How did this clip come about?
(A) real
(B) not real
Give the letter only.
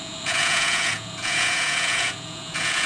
B